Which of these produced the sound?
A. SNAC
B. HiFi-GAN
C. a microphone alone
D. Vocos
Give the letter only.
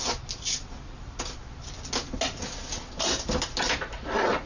C